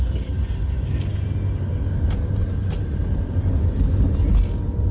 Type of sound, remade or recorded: recorded